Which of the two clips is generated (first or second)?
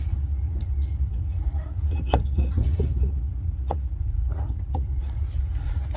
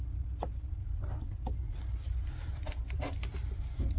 first